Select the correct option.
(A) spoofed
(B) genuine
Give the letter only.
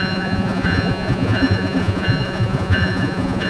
A